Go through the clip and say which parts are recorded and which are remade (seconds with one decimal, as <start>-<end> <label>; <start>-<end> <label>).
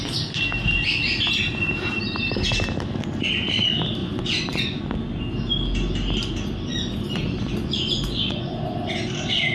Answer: 0.0-4.0 recorded; 4.0-4.8 remade; 4.8-6.7 recorded; 6.7-8.5 remade; 8.5-9.5 recorded